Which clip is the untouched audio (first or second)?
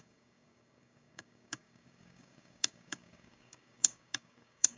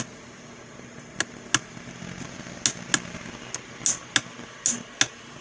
second